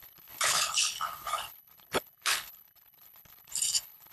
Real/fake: fake